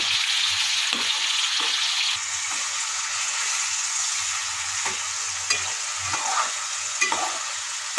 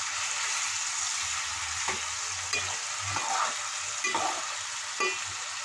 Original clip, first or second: second